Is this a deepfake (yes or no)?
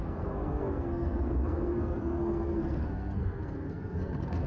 yes